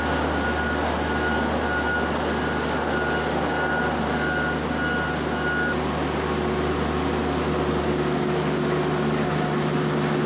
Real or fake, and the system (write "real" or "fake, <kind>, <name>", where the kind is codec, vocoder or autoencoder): real